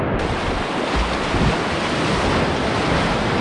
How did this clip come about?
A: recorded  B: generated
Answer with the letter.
A